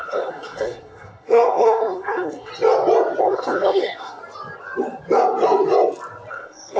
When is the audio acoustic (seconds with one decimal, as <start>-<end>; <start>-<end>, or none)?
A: 2.5-3.2; 4.2-6.3